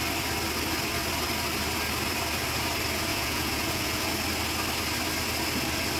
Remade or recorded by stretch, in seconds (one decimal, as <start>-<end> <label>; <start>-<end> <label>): 0.0-3.1 recorded; 3.1-4.1 remade; 4.1-6.0 recorded